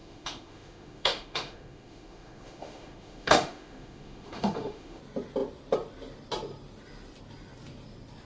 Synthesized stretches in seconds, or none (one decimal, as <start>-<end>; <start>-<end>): 0.0-5.0